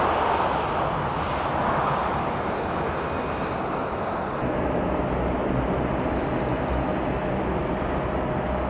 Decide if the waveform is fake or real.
real